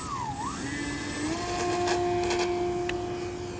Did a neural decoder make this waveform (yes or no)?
no